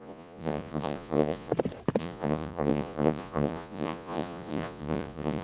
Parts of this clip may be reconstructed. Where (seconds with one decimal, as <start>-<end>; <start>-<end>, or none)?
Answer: 0.0-1.5; 2.0-5.4